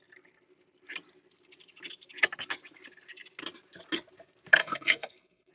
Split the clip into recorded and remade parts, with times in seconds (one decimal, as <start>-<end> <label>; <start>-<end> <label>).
0.0-4.6 recorded; 4.6-5.5 remade